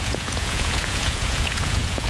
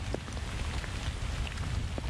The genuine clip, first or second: second